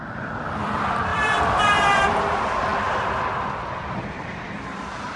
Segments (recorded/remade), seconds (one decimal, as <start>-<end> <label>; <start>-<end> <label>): 0.0-1.1 recorded; 1.1-1.6 remade; 1.6-2.7 recorded; 2.7-5.2 remade